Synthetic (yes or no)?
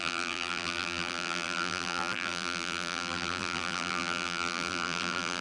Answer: yes